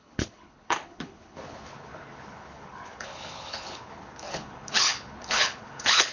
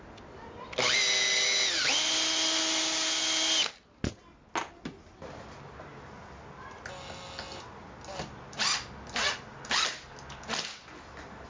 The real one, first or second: second